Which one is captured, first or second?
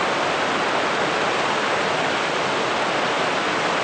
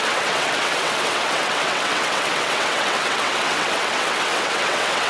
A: first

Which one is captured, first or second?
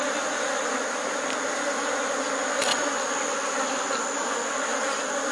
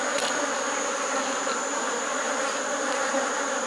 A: first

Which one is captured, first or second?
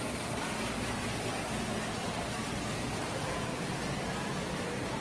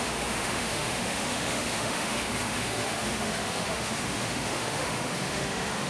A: first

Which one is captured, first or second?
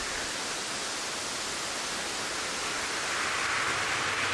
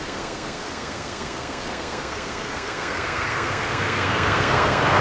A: first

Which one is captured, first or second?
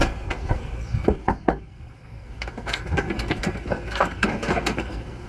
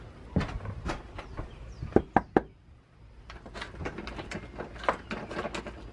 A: second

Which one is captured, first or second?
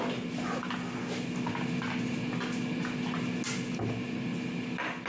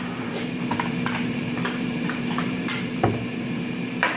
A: first